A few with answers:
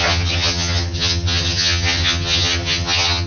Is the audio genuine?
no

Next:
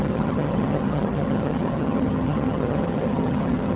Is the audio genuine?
no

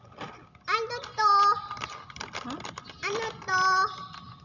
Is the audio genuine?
yes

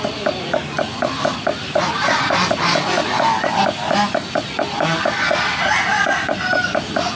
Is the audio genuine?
yes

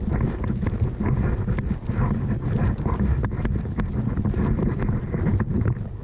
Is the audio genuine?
yes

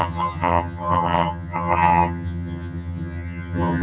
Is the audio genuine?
no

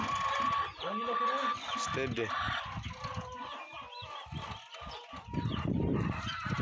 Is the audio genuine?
yes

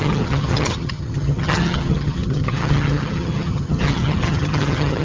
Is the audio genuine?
no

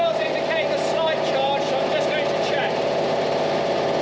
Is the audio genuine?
yes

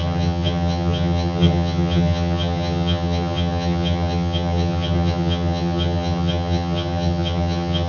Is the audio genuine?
no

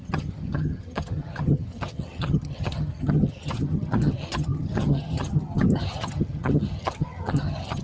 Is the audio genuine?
no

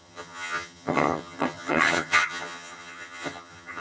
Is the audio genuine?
no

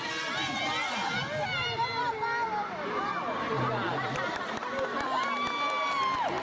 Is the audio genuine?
yes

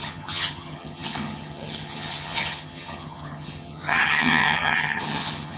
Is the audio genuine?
no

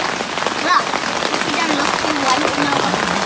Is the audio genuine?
yes